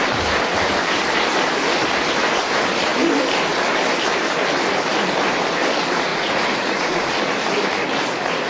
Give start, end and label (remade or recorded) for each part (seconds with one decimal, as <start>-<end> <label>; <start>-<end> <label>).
0.0-6.1 recorded; 6.1-7.1 remade; 7.1-8.5 recorded